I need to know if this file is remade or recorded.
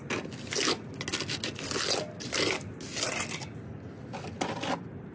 recorded